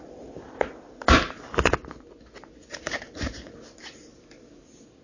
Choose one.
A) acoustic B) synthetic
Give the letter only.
A